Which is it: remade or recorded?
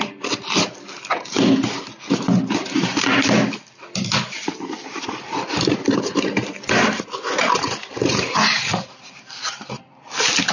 recorded